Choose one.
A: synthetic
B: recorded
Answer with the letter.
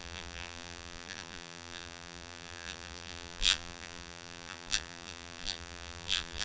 A